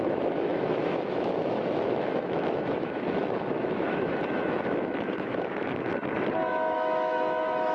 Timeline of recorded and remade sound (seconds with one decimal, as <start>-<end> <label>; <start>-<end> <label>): 0.0-5.9 remade; 5.9-6.5 recorded; 6.5-7.7 remade